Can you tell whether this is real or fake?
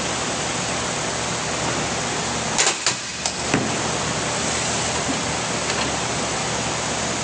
real